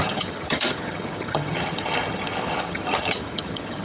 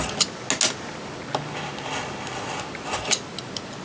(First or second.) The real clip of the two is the second